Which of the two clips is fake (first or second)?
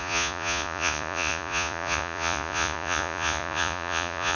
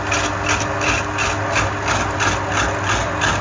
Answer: first